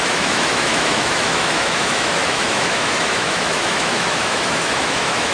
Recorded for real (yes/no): no